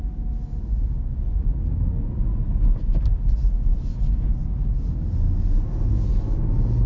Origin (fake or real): real